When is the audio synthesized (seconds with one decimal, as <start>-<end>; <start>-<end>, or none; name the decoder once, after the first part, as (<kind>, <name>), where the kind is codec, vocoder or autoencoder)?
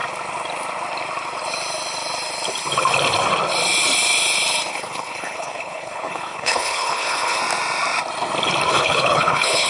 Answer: 4.7-7.4 (codec, HILCodec); 8.7-9.7